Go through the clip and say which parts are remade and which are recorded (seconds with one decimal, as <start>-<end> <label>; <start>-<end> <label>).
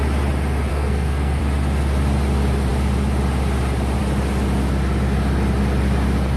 0.0-0.7 recorded; 0.7-1.4 remade; 1.4-6.4 recorded